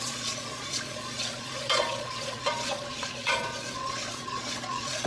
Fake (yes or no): yes